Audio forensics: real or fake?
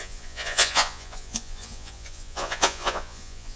fake